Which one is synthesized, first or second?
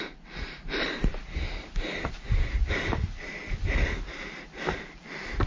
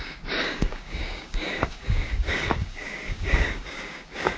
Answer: second